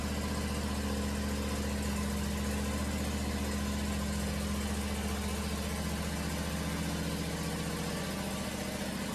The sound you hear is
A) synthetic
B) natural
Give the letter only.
B